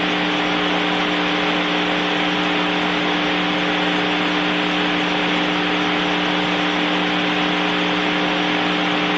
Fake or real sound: real